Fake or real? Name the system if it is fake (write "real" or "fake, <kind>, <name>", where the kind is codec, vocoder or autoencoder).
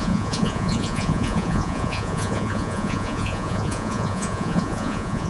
fake, vocoder, Vocos